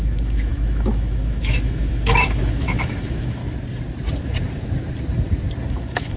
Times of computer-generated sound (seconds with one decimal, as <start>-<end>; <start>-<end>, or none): 0.0-3.4; 5.7-6.2